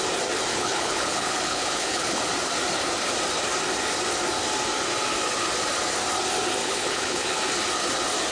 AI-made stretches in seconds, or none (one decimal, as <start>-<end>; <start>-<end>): 0.5-2.2; 6.6-7.4